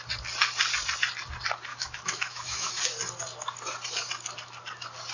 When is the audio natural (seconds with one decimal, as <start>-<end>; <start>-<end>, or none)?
0.0-1.7; 2.7-5.1